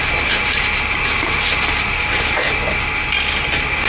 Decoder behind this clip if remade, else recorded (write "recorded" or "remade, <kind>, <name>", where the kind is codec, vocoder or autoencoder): recorded